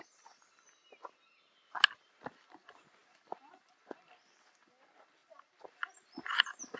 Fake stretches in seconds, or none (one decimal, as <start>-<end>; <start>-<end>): none